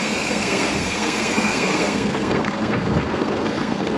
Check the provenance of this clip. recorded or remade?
remade